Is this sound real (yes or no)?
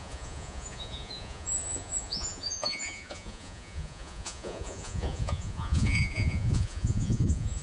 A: no